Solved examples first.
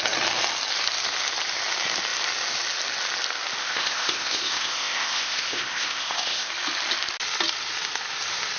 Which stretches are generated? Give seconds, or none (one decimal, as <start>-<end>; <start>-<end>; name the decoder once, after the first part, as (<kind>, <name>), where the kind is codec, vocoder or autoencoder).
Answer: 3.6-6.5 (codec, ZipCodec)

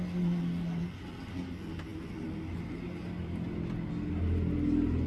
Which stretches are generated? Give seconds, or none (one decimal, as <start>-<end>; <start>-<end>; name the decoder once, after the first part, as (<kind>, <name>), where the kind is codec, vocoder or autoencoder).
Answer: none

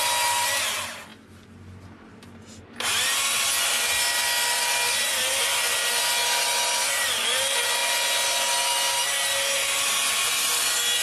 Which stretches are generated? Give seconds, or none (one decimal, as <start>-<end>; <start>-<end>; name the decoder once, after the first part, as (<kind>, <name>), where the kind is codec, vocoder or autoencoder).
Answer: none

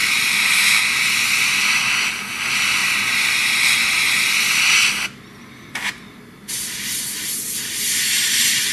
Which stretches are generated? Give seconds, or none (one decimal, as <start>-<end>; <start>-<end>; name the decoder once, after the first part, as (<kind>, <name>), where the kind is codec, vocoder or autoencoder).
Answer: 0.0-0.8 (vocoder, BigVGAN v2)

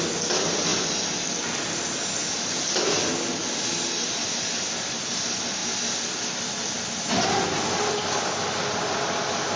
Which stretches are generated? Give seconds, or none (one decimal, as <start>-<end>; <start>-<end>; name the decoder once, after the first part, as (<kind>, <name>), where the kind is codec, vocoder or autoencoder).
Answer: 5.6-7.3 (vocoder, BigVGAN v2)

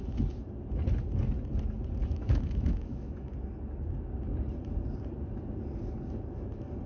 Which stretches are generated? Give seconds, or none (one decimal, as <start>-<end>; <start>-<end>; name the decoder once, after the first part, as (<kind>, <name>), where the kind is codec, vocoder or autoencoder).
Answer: 2.0-3.3 (autoencoder, DAC-VAE)